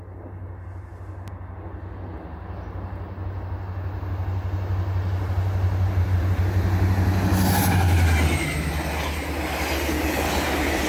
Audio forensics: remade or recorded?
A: recorded